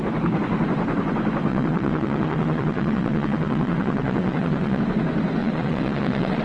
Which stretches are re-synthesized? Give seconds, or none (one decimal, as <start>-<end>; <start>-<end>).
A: 1.5-4.8; 5.4-6.4